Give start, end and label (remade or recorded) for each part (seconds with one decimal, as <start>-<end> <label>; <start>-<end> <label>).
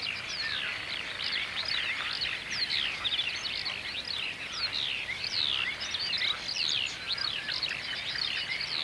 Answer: 0.0-8.8 remade